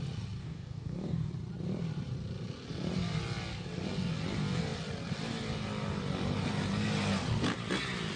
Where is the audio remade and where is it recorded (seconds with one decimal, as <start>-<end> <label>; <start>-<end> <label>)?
0.0-0.4 recorded; 0.4-1.3 remade; 1.3-8.2 recorded